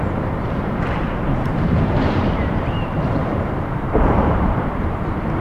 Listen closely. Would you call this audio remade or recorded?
remade